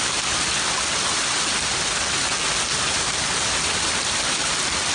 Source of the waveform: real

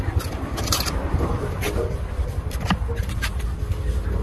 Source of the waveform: real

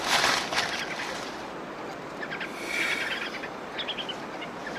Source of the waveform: real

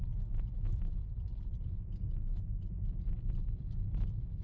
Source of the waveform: fake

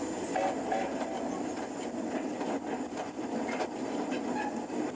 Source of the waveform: real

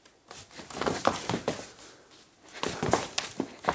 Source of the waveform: real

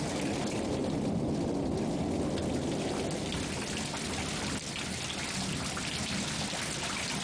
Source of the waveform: real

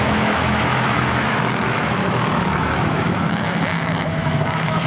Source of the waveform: fake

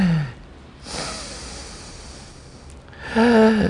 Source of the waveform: real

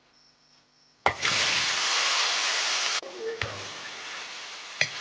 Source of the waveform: real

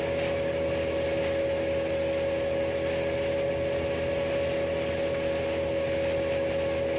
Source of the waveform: real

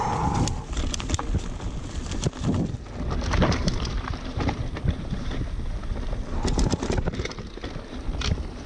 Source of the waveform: real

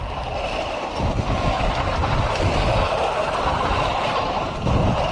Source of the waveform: real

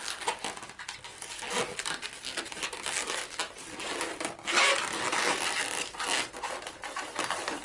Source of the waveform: real